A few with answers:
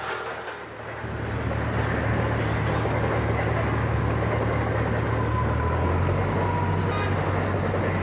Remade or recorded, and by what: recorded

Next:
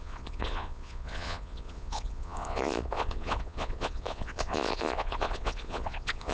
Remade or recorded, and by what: remade, vocoder, Vocos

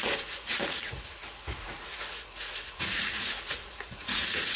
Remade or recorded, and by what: remade, vocoder, Vocos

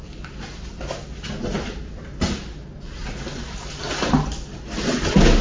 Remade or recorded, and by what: recorded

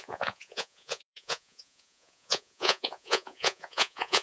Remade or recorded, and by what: remade, vocoder, Vocos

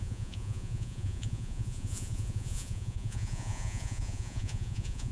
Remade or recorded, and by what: remade, vocoder, Vocos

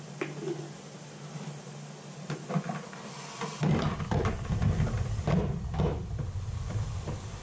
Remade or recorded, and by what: recorded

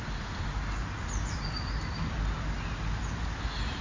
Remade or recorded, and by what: recorded